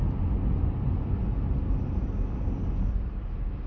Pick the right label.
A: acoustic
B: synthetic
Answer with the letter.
A